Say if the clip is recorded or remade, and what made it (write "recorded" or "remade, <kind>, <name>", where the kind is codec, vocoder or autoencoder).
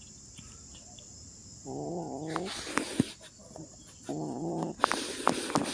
recorded